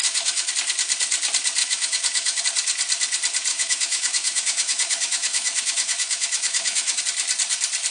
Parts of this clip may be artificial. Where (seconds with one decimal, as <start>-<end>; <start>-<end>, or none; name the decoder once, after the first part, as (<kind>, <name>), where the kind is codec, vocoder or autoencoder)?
0.0-0.5 (autoencoder, DAC-VAE); 1.6-2.4; 3.5-7.0